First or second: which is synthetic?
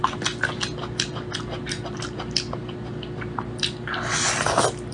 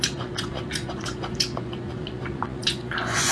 second